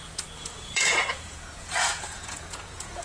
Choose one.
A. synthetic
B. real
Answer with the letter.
A